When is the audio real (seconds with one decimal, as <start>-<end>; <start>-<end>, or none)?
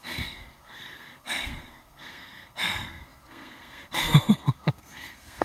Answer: none